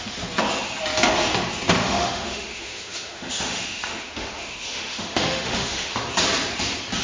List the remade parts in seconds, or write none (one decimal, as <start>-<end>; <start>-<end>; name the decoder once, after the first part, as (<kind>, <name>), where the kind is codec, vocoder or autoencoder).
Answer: 1.8-6.0 (autoencoder, DAC-VAE)